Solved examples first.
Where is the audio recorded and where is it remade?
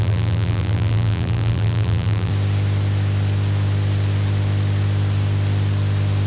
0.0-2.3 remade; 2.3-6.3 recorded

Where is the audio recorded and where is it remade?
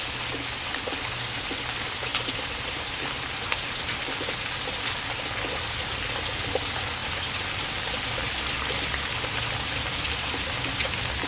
0.0-2.1 recorded; 2.1-2.9 remade; 2.9-11.3 recorded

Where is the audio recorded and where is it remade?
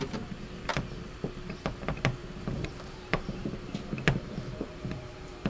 0.0-2.2 recorded; 2.2-5.5 remade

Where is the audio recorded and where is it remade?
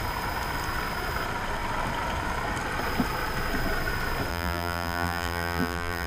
0.0-4.3 recorded; 4.3-6.1 remade